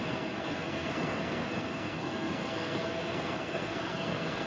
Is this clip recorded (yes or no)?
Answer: no